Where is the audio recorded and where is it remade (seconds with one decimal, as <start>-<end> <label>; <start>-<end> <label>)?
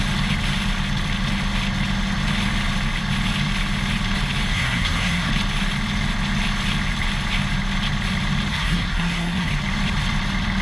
0.0-4.5 recorded; 4.5-5.3 remade; 5.3-8.5 recorded; 8.5-9.5 remade; 9.5-10.6 recorded